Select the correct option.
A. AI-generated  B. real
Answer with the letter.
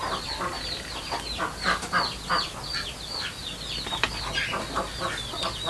B